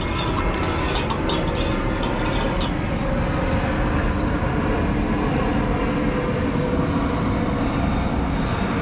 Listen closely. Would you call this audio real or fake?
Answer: real